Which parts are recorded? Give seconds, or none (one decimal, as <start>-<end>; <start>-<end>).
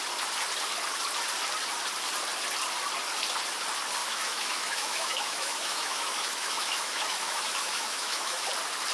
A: 0.0-4.0; 8.5-8.9